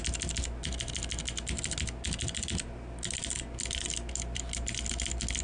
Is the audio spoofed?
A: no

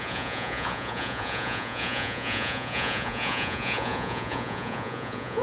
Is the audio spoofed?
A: yes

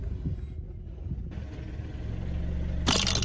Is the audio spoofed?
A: no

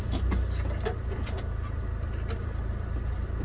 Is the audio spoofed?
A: no